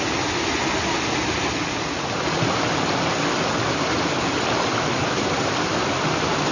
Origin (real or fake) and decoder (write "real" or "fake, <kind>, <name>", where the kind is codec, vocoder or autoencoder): real